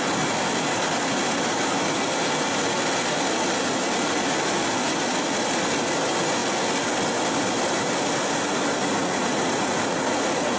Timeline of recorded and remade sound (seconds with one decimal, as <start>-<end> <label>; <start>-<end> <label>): 0.0-8.8 recorded; 8.8-10.6 remade